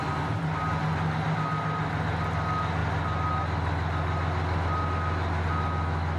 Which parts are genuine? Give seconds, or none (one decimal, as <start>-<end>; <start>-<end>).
0.0-6.2